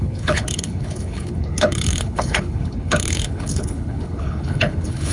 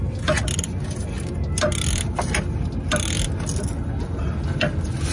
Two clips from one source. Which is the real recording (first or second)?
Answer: second